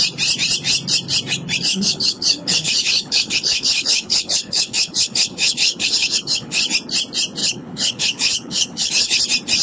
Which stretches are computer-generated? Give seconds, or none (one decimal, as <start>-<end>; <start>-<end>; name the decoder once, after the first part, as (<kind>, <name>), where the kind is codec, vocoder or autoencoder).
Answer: 1.7-6.6 (codec, HILCodec); 7.4-9.2

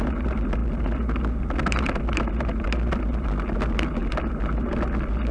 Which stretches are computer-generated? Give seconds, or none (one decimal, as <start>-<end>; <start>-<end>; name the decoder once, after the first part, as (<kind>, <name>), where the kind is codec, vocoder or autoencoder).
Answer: none